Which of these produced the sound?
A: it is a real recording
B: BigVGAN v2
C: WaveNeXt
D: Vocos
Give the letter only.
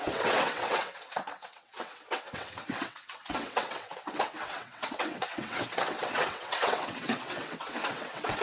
C